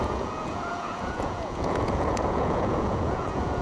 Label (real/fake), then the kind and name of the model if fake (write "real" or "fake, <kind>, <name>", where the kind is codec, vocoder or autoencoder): fake, vocoder, Vocos